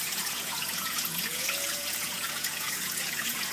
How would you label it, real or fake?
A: fake